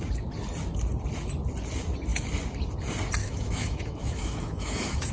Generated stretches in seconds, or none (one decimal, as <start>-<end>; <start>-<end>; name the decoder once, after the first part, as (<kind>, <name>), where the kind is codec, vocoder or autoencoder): 3.2-5.1 (autoencoder, DAC-VAE)